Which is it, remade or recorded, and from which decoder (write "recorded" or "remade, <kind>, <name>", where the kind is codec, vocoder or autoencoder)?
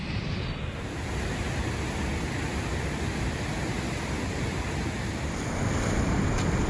recorded